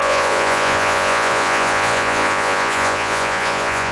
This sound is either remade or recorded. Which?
remade